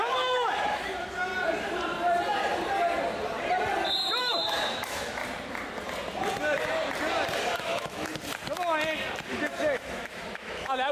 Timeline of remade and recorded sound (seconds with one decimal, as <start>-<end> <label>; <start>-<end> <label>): 0.0-1.3 remade; 1.3-4.2 recorded; 4.2-5.2 remade; 5.2-7.6 recorded; 7.6-8.1 remade; 8.1-9.3 recorded; 9.3-10.9 remade